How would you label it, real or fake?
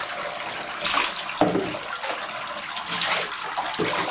real